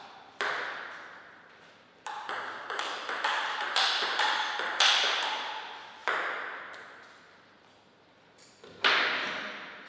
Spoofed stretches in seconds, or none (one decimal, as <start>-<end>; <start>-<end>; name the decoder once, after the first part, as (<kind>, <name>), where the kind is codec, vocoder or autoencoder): none